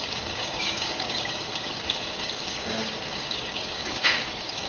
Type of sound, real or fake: fake